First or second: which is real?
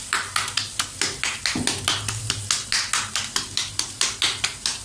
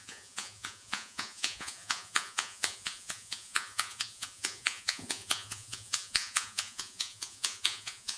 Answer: first